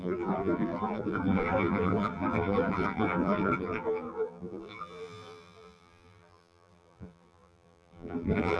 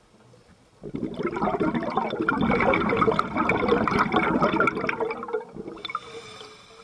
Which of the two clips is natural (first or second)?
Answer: second